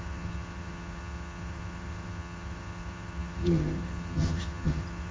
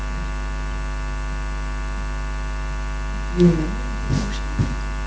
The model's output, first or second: first